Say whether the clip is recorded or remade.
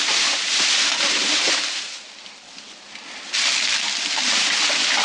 recorded